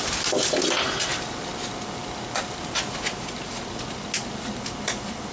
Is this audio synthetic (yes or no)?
no